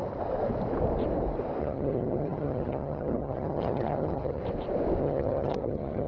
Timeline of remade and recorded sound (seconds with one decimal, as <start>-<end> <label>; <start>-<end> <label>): 0.0-1.6 recorded; 1.6-4.4 remade; 4.4-5.0 recorded; 5.0-6.1 remade